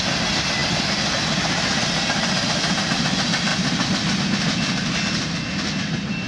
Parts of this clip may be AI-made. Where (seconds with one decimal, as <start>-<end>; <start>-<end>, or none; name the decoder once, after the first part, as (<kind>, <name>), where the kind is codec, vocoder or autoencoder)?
none